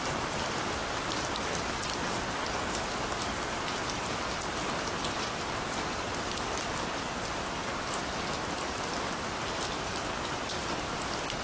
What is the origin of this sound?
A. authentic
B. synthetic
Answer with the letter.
A